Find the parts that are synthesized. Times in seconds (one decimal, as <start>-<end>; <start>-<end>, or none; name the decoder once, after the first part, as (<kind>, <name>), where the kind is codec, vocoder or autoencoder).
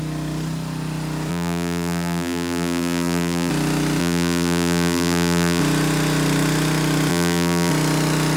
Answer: 1.3-3.5 (vocoder, BigVGAN v2); 4.0-5.6; 7.1-7.7